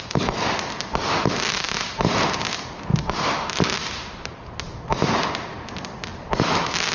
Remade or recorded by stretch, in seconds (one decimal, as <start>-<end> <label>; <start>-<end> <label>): 0.0-2.9 recorded; 2.9-3.9 remade; 3.9-6.9 recorded